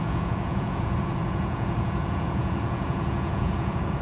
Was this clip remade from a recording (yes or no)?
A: yes